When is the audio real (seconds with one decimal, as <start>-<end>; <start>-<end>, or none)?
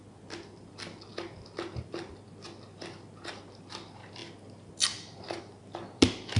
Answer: 0.0-6.4